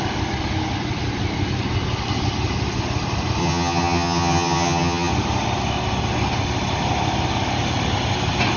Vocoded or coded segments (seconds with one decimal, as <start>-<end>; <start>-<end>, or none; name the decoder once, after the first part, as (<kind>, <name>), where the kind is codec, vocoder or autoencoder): 3.4-5.1 (vocoder, HiFi-GAN)